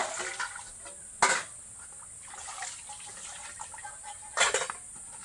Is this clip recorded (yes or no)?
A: yes